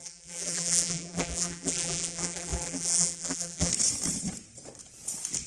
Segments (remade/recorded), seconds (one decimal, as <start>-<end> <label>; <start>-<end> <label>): 0.0-3.7 remade; 3.7-5.5 recorded